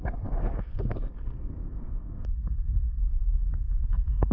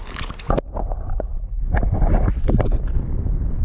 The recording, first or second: second